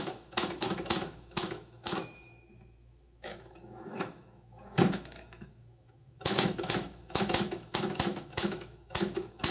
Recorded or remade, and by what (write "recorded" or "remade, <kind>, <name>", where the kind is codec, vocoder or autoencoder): remade, autoencoder, DAC-VAE